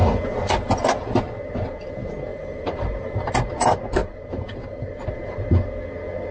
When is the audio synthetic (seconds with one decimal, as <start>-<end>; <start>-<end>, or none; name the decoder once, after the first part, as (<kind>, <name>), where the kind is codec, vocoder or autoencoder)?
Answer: 2.3-3.3 (vocoder, BigVGAN v2); 4.0-5.1